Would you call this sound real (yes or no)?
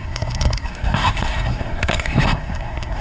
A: no